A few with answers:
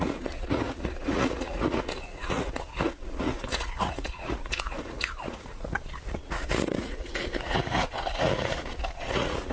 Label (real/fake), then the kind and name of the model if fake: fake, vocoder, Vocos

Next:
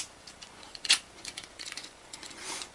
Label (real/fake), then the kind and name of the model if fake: fake, vocoder, Vocos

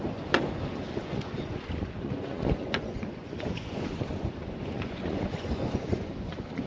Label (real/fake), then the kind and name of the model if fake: fake, vocoder, Vocos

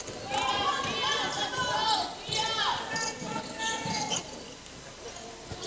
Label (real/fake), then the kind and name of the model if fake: real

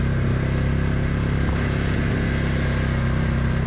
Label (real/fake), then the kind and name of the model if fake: real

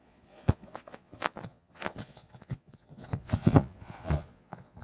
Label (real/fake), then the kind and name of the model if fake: fake, vocoder, Vocos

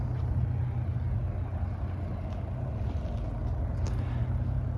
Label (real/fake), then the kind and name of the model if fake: real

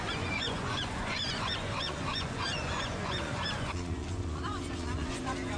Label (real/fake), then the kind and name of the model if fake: fake, vocoder, Vocos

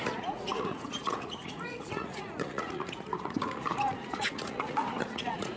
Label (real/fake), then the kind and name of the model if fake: fake, vocoder, Vocos